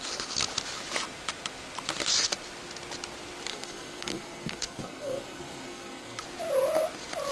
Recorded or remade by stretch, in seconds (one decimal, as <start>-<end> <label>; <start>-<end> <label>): 0.0-3.5 recorded; 3.5-6.2 remade; 6.2-7.3 recorded